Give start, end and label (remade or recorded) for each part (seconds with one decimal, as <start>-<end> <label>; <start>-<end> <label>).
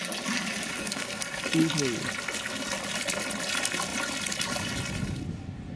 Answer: 0.0-0.8 recorded; 0.8-1.4 remade; 1.4-5.8 recorded